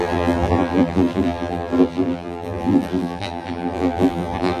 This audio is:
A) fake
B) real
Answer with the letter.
A